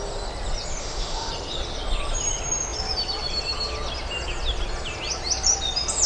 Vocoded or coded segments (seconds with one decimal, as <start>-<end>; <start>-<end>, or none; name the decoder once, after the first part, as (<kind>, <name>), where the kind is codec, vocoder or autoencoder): 0.8-1.3 (autoencoder, DAC-VAE)